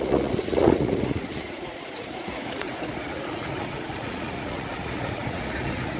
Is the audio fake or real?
fake